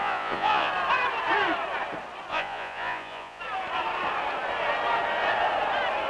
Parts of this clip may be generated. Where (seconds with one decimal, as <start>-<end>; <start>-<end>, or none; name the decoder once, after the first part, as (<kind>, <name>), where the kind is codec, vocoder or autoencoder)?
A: 0.0-0.7 (vocoder, Vocos); 2.3-3.4